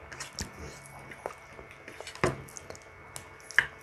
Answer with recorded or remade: recorded